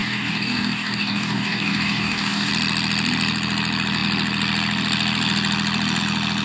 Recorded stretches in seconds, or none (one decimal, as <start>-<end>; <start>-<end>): 2.5-6.4